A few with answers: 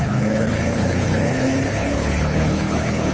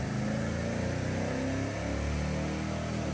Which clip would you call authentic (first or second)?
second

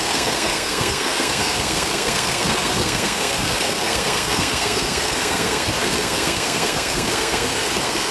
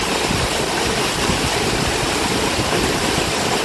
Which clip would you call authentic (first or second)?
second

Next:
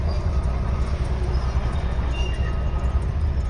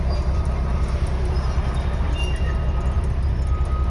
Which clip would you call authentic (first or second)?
second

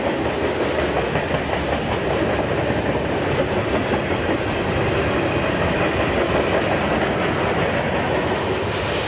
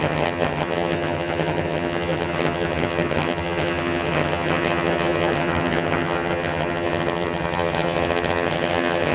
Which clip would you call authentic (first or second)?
first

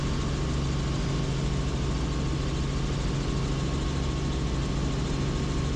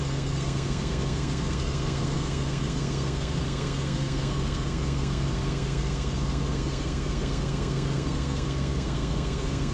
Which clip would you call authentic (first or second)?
first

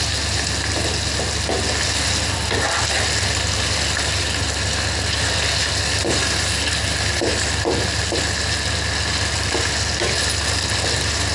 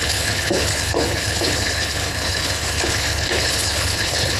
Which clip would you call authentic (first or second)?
first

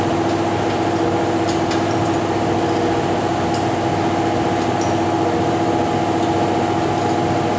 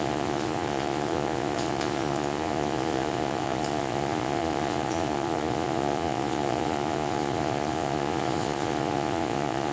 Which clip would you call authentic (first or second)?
first